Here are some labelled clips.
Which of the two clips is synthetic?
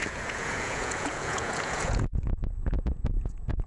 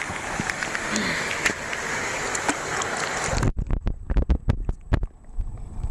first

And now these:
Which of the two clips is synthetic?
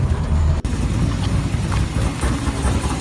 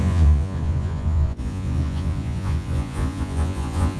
second